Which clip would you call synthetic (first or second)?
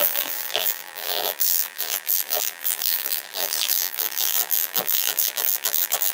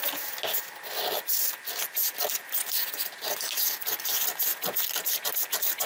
first